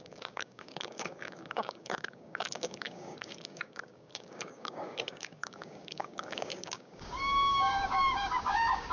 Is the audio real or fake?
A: fake